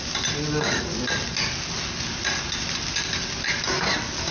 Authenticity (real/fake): real